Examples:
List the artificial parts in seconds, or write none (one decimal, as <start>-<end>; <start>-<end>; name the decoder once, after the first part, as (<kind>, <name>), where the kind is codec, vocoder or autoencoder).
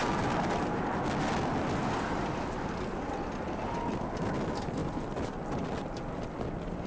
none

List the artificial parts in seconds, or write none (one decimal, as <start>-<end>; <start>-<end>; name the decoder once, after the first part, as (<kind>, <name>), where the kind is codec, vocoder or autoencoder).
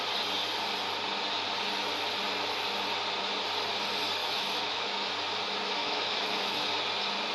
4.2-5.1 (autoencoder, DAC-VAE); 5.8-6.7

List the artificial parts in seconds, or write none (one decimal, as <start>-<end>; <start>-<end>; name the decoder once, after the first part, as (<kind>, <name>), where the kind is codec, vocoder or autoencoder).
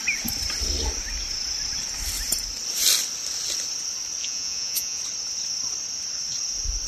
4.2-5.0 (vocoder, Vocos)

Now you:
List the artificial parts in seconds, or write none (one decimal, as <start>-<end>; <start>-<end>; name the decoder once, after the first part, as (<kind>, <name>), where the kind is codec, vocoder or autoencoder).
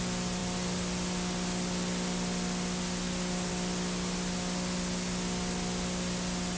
none